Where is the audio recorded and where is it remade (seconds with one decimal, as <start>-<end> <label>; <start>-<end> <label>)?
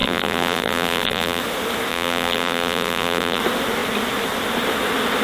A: 0.0-1.4 remade; 1.4-1.9 recorded; 1.9-3.4 remade; 3.4-5.2 recorded